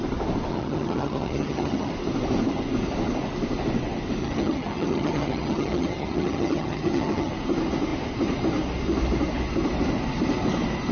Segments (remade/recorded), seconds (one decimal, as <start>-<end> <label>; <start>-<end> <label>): 0.0-0.5 recorded; 0.5-1.9 remade; 1.9-4.2 recorded; 4.2-7.3 remade; 7.3-10.9 recorded